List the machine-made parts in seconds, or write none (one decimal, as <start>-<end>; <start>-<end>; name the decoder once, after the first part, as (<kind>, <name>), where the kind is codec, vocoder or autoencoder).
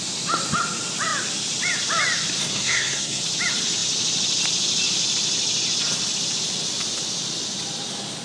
2.4-3.2 (codec, SNAC)